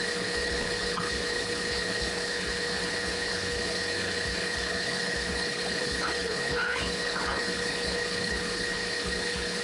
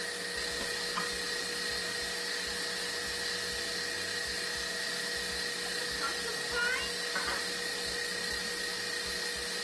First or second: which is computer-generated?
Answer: first